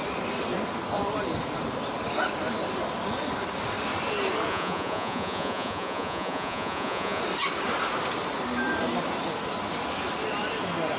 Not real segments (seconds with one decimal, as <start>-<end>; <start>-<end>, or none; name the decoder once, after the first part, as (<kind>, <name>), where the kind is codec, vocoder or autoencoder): 4.5-7.2 (vocoder, Vocos)